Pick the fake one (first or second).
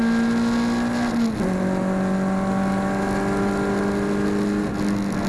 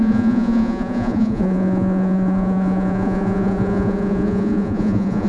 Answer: second